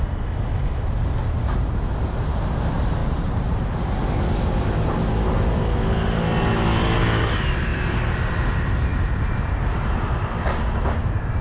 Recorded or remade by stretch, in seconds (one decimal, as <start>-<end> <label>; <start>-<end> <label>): 0.0-3.0 recorded; 3.0-3.7 remade; 3.7-8.9 recorded; 8.9-10.6 remade; 10.6-11.4 recorded